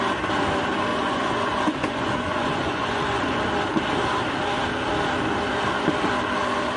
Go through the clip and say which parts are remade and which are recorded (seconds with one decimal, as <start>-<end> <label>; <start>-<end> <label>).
0.0-0.9 recorded; 0.9-3.4 remade; 3.4-6.8 recorded